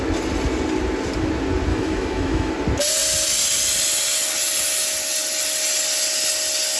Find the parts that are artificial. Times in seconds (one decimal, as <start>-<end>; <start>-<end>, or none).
1.7-2.5